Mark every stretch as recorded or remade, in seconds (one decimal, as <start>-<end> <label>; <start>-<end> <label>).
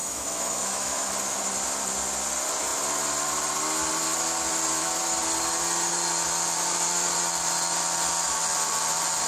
0.0-1.1 remade; 1.1-9.3 recorded